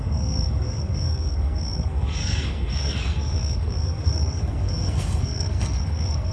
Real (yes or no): no